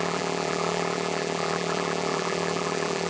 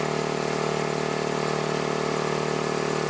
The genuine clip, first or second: second